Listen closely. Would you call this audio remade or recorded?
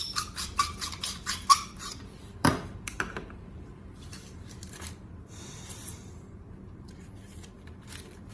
remade